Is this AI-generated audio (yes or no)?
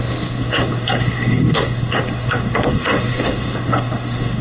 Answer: yes